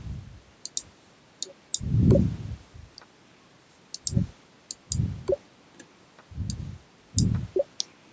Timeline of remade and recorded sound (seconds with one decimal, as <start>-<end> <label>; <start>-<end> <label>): 0.0-8.1 recorded